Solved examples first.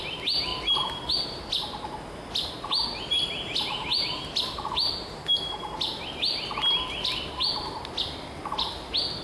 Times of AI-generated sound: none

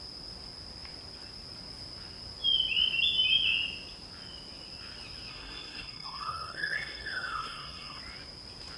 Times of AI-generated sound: 5.3-8.0 (codec, SNAC)